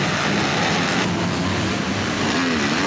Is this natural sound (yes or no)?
yes